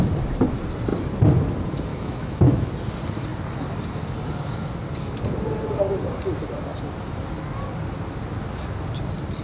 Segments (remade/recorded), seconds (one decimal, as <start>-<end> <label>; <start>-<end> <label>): 0.0-1.9 recorded; 1.9-2.7 remade; 2.7-9.4 recorded